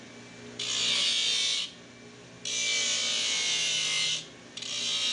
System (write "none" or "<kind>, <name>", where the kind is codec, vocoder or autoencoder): none